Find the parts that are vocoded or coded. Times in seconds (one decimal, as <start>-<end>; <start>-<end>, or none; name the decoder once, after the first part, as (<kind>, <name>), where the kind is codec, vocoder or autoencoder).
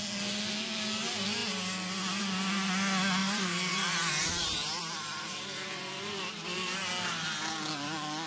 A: 3.2-6.9 (vocoder, BigVGAN v2)